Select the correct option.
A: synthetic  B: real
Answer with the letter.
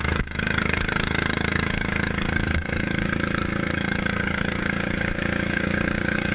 A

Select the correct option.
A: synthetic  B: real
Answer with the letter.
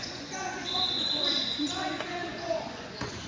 A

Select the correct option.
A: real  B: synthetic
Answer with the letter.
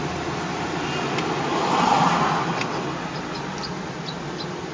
A